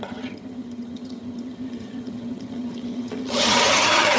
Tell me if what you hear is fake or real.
fake